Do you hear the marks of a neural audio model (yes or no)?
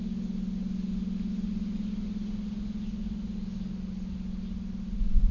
no